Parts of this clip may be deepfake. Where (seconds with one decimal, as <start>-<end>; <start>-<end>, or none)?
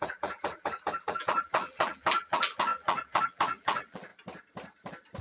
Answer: 0.0-4.1